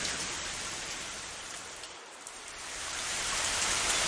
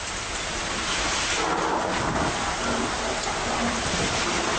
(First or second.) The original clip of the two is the second